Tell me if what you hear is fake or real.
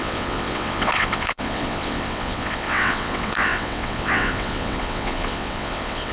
fake